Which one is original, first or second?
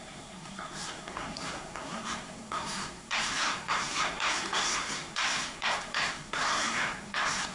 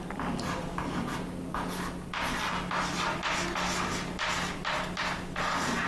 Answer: second